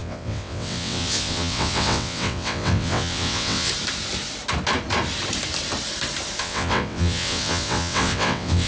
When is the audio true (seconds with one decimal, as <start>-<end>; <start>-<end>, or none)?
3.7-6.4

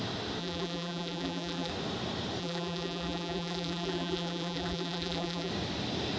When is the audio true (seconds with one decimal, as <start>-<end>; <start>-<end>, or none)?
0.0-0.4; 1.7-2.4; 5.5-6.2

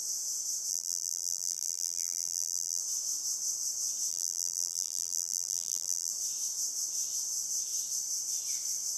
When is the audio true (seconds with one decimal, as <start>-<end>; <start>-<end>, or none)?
0.0-0.7; 2.8-4.1; 6.1-9.0

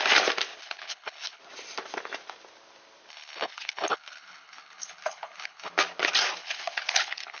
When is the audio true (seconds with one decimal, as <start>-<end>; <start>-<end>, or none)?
0.0-0.6; 1.4-3.1; 5.7-6.4

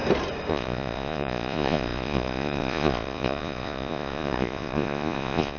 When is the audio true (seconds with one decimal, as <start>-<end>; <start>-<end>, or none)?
0.0-0.5